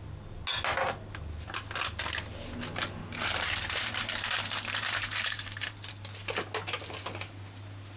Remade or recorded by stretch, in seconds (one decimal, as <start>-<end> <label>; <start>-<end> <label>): 0.0-3.1 recorded; 3.1-5.9 remade; 5.9-8.0 recorded